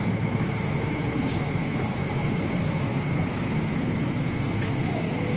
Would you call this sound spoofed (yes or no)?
yes